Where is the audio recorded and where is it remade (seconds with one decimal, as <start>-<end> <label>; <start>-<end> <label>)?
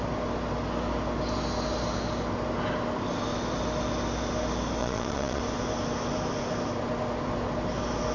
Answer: 0.0-4.8 recorded; 4.8-5.4 remade; 5.4-8.1 recorded